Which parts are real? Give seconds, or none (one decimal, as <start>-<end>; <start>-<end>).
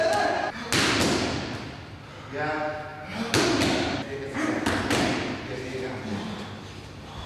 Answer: 0.0-7.3